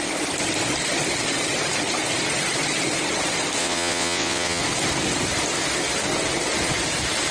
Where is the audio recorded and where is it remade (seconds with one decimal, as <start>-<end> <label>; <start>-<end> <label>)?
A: 0.0-3.6 recorded; 3.6-4.6 remade; 4.6-7.3 recorded